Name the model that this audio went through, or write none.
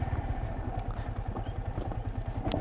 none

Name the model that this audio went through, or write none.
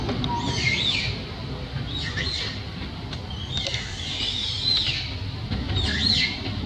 none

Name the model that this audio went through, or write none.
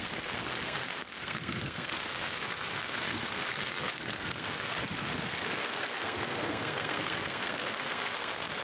codec, SNAC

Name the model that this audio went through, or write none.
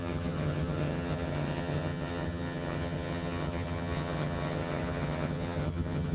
vocoder, HiFi-GAN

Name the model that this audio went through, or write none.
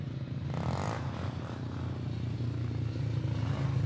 none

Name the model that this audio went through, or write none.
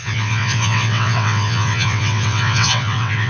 vocoder, WaveNeXt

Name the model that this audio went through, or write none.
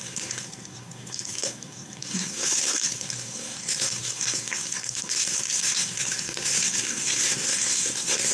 codec, SNAC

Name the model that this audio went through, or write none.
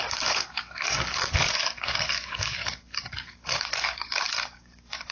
codec, DAC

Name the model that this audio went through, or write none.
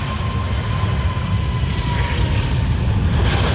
none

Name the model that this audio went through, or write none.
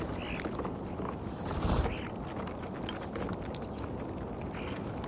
none